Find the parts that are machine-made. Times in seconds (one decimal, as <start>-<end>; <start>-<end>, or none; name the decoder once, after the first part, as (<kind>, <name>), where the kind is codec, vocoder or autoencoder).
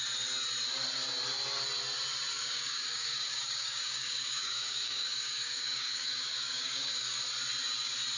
2.3-7.2 (codec, DAC)